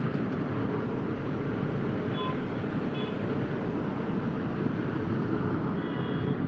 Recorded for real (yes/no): yes